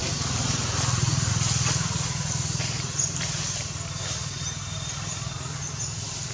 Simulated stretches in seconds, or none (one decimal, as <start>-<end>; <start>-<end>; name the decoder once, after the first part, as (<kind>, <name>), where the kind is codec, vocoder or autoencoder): 0.0-1.3 (vocoder, BigVGAN v2)